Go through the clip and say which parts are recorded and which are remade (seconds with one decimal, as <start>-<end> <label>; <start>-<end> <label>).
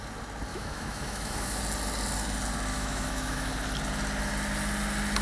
0.0-0.5 recorded; 0.5-1.6 remade; 1.6-2.7 recorded; 2.7-3.5 remade; 3.5-5.2 recorded